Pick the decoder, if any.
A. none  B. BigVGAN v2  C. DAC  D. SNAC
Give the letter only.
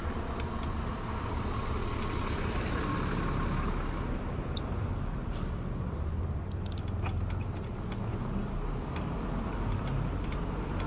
A